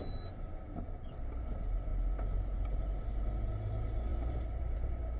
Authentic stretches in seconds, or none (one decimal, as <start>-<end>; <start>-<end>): 0.0-4.1